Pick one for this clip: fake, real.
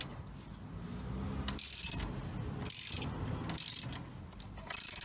real